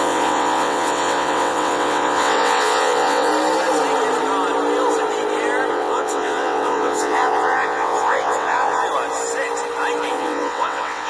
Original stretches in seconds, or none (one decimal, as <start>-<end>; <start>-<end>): 3.3-5.7; 8.8-10.1